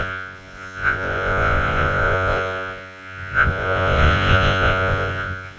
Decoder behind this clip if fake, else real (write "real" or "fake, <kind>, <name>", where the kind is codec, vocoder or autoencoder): fake, vocoder, Vocos